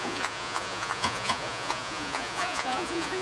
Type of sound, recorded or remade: remade